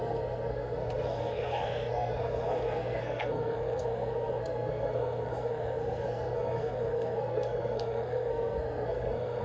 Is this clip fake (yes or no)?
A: yes